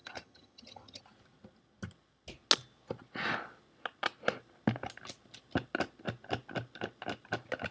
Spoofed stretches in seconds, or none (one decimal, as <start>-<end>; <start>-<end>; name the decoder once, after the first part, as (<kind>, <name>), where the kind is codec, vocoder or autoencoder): 0.0-1.0 (vocoder, HiFi-GAN)